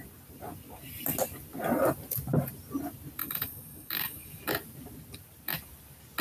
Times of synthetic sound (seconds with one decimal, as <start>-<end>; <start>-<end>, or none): 3.2-4.4